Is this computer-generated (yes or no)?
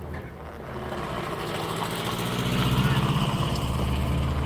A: no